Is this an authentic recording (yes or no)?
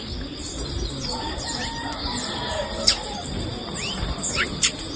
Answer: yes